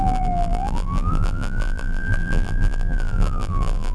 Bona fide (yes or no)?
no